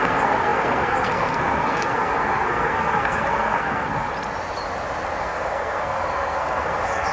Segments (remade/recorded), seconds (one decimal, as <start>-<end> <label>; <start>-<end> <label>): 0.0-4.1 remade; 4.1-5.2 recorded; 5.2-7.1 remade